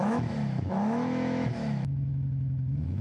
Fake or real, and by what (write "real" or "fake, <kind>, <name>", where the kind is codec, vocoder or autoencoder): fake, autoencoder, DAC-VAE